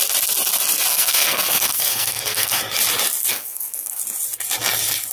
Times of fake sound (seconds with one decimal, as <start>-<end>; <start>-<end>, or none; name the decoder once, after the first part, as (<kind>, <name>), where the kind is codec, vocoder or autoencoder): 0.9-2.6 (codec, SNAC); 3.3-4.0